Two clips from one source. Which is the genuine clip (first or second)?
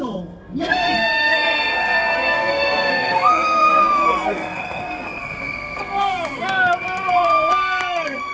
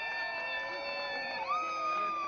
second